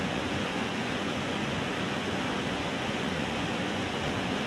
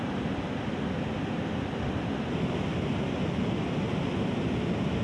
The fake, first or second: first